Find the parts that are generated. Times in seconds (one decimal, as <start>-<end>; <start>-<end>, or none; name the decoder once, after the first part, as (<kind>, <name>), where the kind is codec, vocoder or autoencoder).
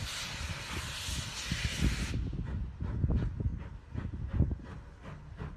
none